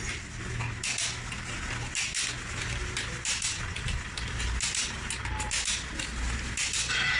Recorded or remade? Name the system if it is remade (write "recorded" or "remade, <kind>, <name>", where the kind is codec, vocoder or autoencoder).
recorded